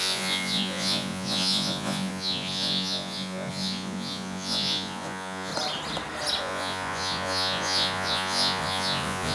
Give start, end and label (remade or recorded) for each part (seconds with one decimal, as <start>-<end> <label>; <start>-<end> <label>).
0.0-5.5 remade; 5.5-6.4 recorded; 6.4-9.3 remade